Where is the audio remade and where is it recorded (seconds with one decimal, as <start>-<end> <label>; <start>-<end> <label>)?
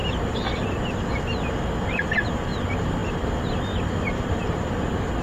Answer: 0.0-5.2 recorded